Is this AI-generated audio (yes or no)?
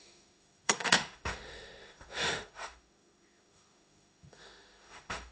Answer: yes